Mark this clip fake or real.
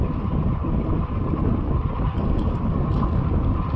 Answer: fake